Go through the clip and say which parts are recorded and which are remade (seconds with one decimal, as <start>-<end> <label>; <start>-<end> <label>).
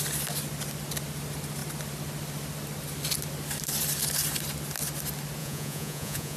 0.0-5.4 recorded; 5.4-6.4 remade